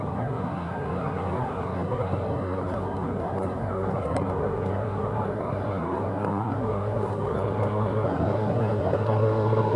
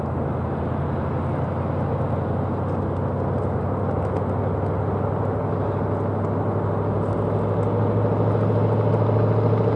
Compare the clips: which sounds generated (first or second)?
first